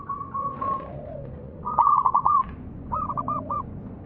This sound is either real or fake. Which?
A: fake